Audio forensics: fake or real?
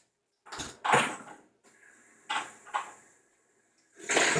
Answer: real